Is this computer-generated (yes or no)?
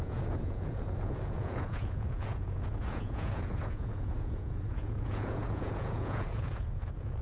yes